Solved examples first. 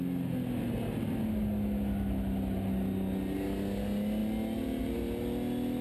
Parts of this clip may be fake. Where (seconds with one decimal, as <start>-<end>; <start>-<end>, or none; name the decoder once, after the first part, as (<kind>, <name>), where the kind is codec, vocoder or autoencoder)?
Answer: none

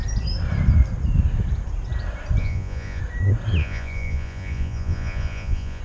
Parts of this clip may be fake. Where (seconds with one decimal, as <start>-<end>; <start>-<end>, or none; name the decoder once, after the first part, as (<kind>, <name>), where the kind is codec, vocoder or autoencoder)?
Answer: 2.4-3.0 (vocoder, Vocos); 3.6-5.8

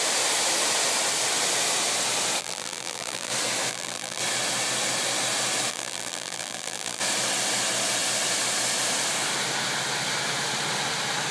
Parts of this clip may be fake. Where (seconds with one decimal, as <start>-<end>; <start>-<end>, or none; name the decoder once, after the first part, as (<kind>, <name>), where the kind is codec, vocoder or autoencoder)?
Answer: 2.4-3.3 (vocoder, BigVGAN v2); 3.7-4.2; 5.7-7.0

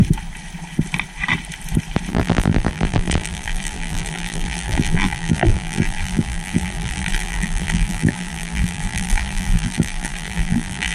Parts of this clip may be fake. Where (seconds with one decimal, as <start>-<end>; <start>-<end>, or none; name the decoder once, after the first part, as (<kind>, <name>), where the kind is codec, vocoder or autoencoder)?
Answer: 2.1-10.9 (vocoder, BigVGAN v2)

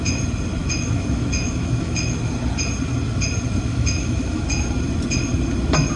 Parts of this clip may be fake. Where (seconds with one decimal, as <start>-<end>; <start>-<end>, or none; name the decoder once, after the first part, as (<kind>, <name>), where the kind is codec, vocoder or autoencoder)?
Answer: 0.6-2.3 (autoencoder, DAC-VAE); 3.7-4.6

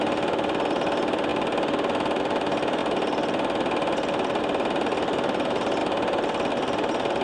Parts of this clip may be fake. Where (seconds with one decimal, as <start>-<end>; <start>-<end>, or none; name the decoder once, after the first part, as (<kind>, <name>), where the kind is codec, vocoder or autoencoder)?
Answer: none

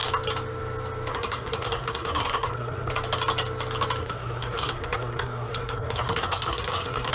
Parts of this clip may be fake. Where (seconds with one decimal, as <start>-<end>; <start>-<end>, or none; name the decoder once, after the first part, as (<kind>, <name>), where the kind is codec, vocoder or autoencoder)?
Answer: 1.1-2.9 (codec, SNAC); 4.0-7.1

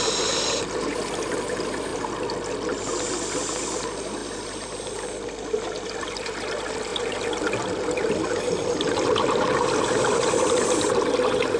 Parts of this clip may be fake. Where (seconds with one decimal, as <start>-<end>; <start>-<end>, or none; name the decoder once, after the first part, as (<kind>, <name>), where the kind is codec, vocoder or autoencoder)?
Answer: 6.9-7.7 (vocoder, BigVGAN v2)